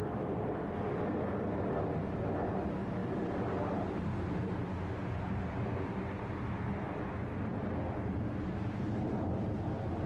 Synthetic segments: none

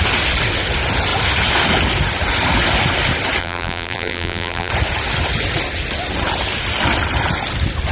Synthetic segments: 3.4-4.7 (vocoder, BigVGAN v2)